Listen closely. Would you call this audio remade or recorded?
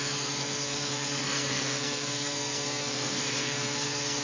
remade